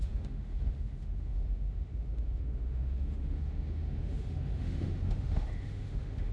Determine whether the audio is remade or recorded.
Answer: remade